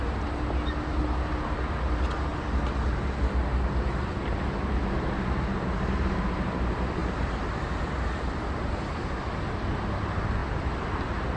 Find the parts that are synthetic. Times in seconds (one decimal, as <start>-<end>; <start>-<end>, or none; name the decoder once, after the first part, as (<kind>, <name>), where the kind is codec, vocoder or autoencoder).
7.0-8.4 (vocoder, BigVGAN v2); 10.4-11.4